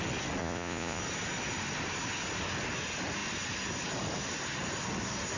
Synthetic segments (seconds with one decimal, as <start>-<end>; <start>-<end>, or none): 0.4-1.0